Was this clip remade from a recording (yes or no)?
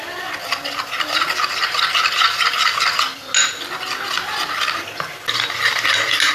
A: no